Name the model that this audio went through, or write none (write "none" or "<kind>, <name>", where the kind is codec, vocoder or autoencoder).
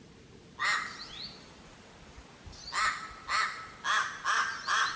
none